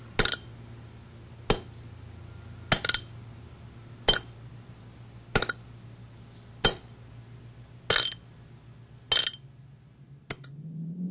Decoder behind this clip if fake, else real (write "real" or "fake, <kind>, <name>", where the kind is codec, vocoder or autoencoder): real